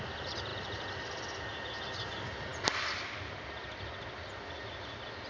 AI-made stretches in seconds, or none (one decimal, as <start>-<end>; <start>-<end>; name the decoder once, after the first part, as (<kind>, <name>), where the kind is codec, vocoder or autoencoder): none